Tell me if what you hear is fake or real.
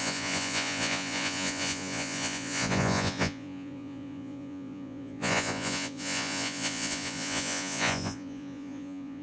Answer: fake